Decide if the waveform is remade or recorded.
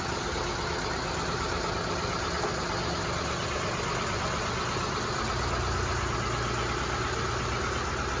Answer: recorded